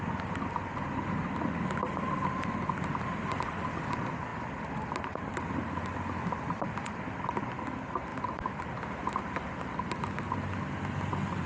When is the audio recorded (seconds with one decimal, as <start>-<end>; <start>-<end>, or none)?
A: 0.0-11.5

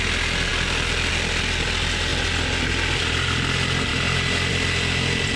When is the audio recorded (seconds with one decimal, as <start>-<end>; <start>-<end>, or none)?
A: 0.0-5.4